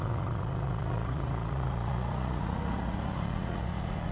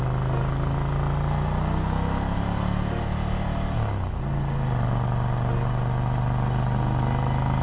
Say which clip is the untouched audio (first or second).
second